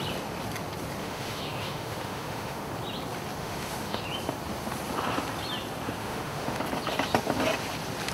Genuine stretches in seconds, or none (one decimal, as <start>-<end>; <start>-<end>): 0.0-1.0; 2.7-3.4; 4.0-6.0; 6.6-8.1